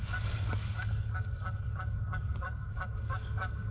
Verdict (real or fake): fake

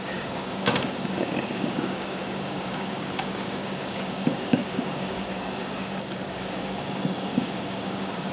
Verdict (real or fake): fake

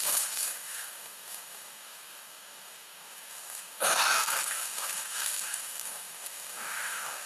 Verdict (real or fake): fake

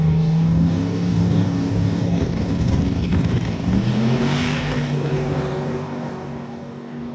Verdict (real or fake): fake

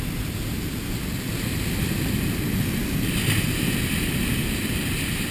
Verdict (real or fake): real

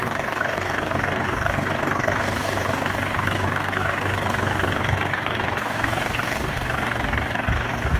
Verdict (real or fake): fake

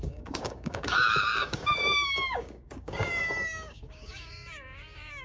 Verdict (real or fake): fake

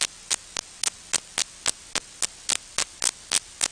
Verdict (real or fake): real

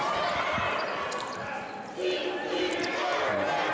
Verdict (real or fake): real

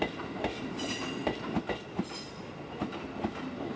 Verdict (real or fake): real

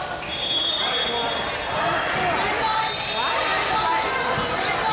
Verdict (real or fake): real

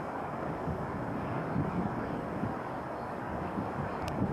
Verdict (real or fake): fake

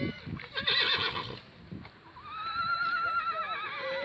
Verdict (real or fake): real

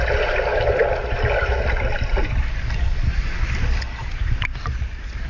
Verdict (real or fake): real